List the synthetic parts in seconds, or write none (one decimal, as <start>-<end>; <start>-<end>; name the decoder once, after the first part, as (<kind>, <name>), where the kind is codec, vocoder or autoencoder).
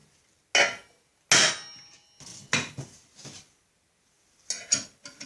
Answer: none